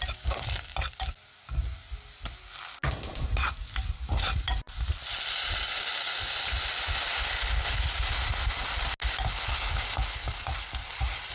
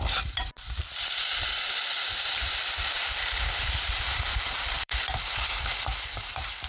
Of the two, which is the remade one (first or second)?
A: second